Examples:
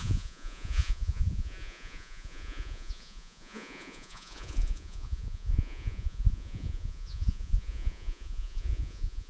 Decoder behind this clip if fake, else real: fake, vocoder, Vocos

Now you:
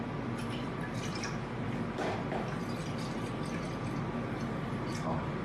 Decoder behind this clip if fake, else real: real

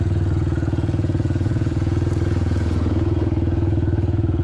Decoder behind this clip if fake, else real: fake, vocoder, Vocos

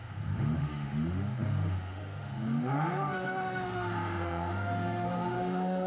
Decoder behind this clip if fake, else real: fake, autoencoder, DAC-VAE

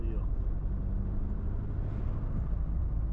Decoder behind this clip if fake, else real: real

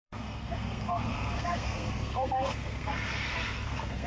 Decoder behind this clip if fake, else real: fake, codec, SNAC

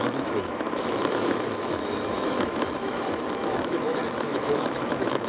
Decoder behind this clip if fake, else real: fake, autoencoder, DAC-VAE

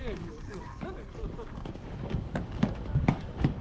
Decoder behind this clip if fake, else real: fake, codec, DAC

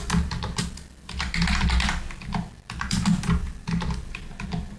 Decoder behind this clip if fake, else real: real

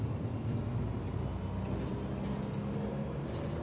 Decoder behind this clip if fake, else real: real